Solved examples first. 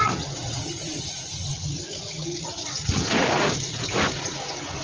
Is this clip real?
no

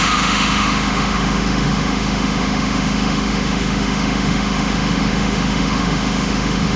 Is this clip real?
no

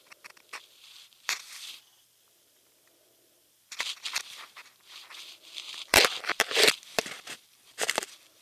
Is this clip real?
no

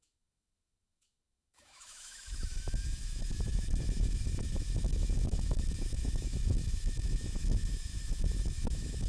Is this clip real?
no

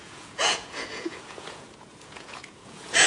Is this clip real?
no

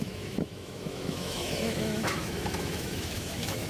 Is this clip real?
no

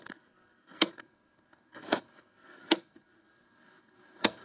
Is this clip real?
no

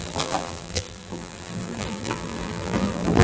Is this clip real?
no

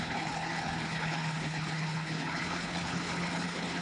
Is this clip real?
no